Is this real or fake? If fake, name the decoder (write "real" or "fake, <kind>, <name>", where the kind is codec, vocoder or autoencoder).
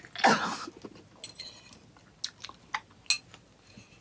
real